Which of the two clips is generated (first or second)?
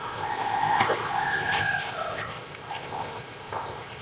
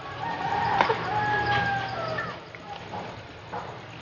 first